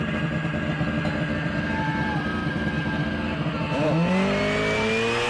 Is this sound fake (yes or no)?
no